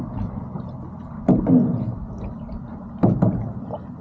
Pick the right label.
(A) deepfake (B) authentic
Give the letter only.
B